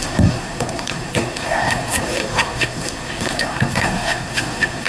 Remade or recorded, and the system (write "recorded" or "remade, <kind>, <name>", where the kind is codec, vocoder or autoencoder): remade, codec, SNAC